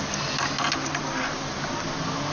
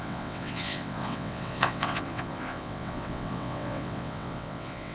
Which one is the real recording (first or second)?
first